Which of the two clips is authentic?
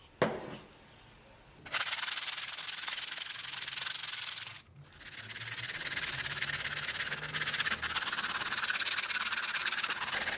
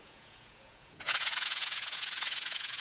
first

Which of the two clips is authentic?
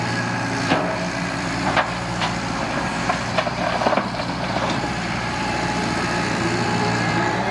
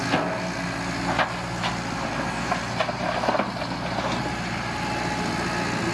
second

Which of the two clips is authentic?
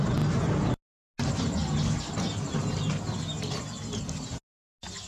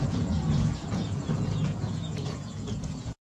first